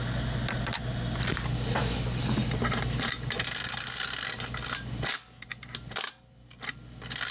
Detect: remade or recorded recorded